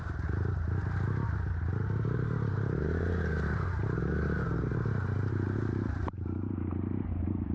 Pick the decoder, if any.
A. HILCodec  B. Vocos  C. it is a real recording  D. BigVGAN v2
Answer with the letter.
D